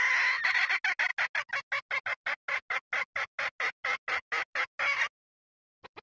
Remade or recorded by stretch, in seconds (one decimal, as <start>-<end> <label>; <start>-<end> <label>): 0.0-6.0 recorded

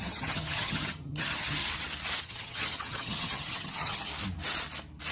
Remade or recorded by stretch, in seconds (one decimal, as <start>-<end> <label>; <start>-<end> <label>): 0.0-1.6 remade; 1.6-2.2 recorded; 2.2-4.1 remade; 4.1-5.1 recorded

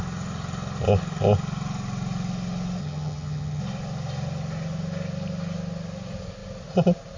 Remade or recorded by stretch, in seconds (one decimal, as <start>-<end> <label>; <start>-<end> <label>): 0.0-2.8 recorded; 2.8-3.6 remade; 3.6-7.2 recorded

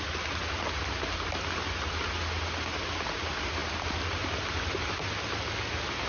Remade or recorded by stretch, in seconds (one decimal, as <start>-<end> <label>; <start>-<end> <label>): 0.0-6.1 recorded

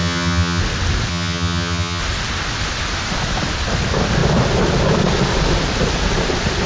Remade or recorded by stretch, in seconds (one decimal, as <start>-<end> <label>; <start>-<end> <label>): 0.0-0.6 remade; 0.6-1.1 recorded; 1.1-2.0 remade; 2.0-6.7 recorded

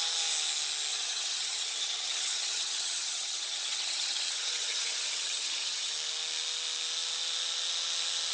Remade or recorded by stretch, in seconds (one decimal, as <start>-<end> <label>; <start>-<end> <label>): 0.0-0.9 recorded; 0.9-5.9 remade; 5.9-8.3 recorded

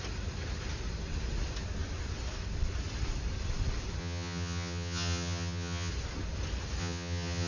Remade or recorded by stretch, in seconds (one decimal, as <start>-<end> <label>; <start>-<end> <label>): 0.0-4.0 recorded; 4.0-5.9 remade; 5.9-6.8 recorded; 6.8-7.5 remade

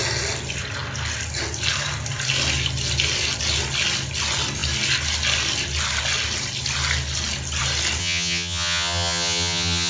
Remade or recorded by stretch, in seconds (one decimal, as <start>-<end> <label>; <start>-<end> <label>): 0.0-8.0 recorded; 8.0-9.9 remade